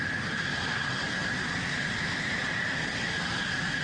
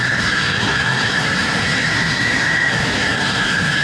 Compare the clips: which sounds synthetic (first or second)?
second